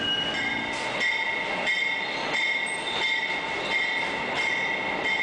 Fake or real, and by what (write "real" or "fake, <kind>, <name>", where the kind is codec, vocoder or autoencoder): real